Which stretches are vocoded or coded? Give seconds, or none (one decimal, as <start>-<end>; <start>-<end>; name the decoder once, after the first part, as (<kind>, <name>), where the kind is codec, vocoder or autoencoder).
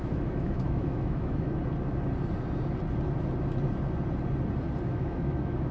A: 0.0-1.5 (autoencoder, DAC-VAE); 4.9-5.7